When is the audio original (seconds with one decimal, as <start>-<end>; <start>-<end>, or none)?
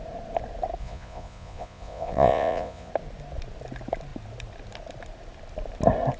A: 0.0-0.8; 2.9-6.2